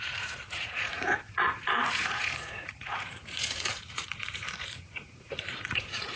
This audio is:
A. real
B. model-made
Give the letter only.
B